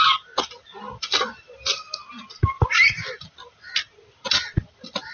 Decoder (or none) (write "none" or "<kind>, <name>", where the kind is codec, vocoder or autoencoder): none